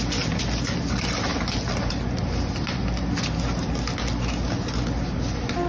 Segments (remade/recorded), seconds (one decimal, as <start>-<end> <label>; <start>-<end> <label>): 0.0-5.7 recorded